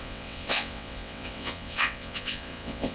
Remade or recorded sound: remade